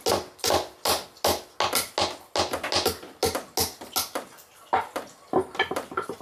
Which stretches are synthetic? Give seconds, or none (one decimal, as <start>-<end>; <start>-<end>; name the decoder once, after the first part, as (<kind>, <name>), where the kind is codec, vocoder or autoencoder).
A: none